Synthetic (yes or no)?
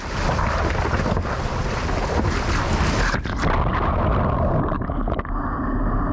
no